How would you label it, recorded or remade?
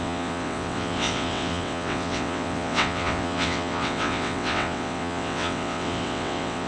remade